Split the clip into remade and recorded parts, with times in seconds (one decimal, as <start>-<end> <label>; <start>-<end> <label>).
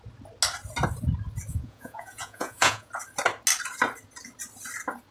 0.0-1.5 recorded; 1.5-2.9 remade; 2.9-5.1 recorded